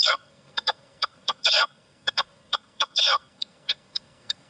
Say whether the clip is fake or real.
fake